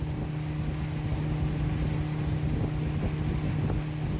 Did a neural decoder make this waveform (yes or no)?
no